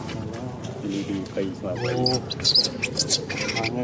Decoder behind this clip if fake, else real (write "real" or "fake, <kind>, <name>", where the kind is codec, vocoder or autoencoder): real